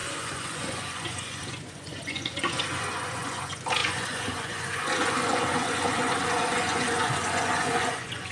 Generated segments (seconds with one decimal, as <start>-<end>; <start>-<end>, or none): 0.0-8.3